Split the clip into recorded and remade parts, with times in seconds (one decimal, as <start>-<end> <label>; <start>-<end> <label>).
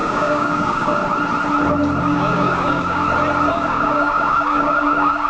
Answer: 0.0-1.0 remade; 1.0-2.0 recorded; 2.0-3.0 remade; 3.0-3.5 recorded; 3.5-5.3 remade